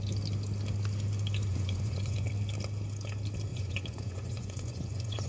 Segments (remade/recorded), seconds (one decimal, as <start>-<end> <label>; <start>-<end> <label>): 0.0-1.5 recorded; 1.5-2.3 remade; 2.3-3.5 recorded; 3.5-5.3 remade